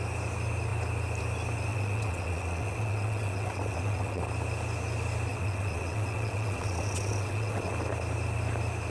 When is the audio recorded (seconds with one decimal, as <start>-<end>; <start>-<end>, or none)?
0.0-1.7; 4.2-5.3; 7.7-8.9